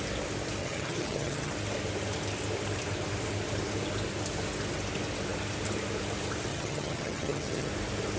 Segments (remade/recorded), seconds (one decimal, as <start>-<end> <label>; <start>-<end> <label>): 0.0-0.6 recorded; 0.6-1.5 remade; 1.5-6.5 recorded; 6.5-7.7 remade; 7.7-8.2 recorded